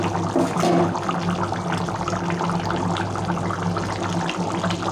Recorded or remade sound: recorded